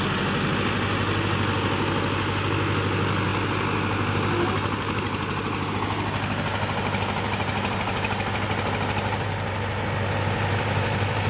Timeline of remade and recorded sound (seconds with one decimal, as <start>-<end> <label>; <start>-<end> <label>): 0.0-11.3 recorded